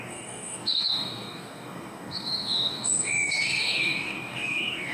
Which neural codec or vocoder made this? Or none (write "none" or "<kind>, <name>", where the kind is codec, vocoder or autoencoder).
codec, DAC